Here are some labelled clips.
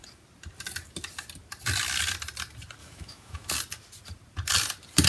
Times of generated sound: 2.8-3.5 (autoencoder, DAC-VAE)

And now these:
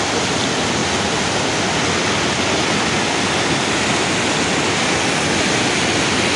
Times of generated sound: none

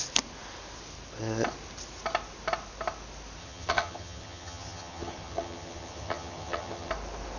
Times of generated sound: 3.4-6.9 (vocoder, HiFi-GAN)

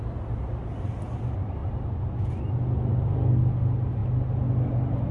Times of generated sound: none

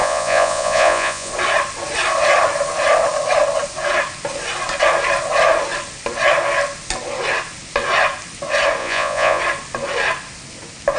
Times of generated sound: 0.0-1.3 (vocoder, Vocos); 8.8-9.4

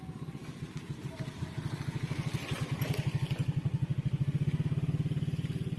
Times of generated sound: none